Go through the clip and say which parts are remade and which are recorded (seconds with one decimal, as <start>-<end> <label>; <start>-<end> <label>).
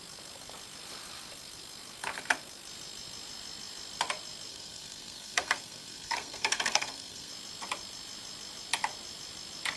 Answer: 0.0-4.5 recorded; 4.5-7.3 remade; 7.3-9.8 recorded